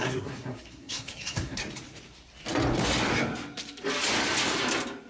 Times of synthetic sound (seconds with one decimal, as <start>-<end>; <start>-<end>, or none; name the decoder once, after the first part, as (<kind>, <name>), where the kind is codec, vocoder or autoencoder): 0.0-1.6 (codec, SNAC)